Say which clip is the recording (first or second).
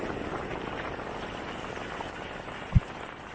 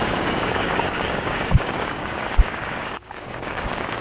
first